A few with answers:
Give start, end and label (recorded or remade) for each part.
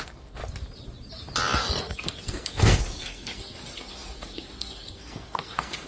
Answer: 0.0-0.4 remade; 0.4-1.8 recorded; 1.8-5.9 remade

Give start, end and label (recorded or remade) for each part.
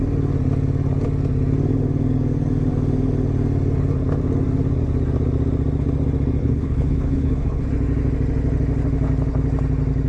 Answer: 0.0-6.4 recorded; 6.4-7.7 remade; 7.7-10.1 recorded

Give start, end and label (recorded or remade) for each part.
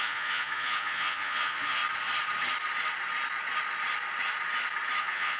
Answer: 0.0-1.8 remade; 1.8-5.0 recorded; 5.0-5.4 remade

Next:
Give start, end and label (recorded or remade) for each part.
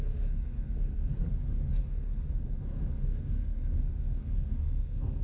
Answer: 0.0-1.2 remade; 1.2-1.8 recorded; 1.8-5.2 remade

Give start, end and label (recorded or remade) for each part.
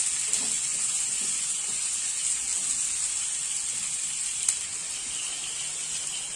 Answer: 0.0-0.7 recorded; 0.7-2.1 remade; 2.1-6.4 recorded